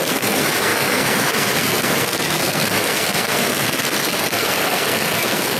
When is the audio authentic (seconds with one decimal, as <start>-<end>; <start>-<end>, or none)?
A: none